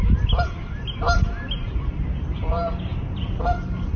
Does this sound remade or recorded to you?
recorded